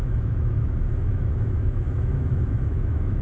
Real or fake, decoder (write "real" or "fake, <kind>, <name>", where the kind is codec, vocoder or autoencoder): fake, autoencoder, DAC-VAE